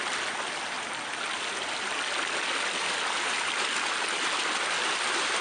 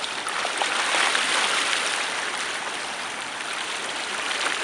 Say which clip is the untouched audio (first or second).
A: first